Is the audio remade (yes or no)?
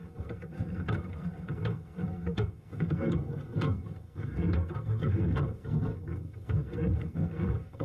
yes